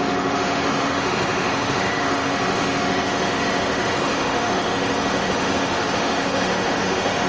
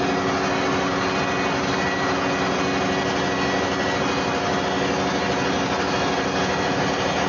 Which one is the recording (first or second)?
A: second